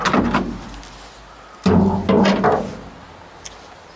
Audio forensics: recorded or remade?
recorded